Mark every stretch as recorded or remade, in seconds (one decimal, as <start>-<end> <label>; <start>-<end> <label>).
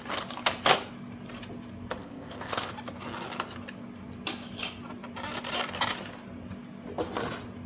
0.0-2.0 recorded; 2.0-2.7 remade; 2.7-7.7 recorded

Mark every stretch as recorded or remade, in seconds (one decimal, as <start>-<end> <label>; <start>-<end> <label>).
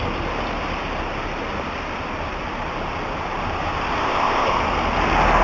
0.0-4.0 recorded; 4.0-4.6 remade; 4.6-5.4 recorded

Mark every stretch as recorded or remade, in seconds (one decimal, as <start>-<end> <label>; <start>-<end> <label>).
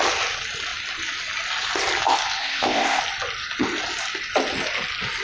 0.0-2.4 recorded; 2.4-3.0 remade; 3.0-5.2 recorded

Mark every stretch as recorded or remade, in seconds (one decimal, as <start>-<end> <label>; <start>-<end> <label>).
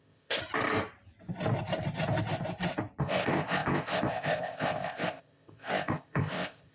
0.0-0.4 remade; 0.4-3.0 recorded; 3.0-6.7 remade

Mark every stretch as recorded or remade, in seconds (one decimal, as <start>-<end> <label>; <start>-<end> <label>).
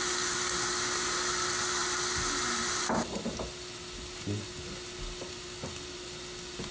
0.0-6.7 recorded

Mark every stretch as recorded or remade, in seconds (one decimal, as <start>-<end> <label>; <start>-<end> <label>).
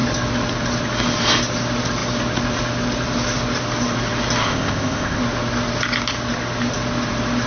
0.0-4.4 recorded; 4.4-5.2 remade; 5.2-7.5 recorded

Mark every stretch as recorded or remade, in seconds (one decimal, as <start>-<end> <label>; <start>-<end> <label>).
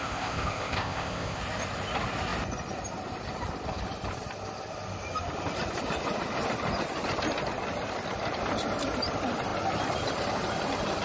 0.0-1.4 remade; 1.4-11.0 recorded